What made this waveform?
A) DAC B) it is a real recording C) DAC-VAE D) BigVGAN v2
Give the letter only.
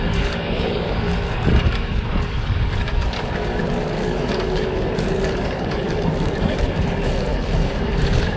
A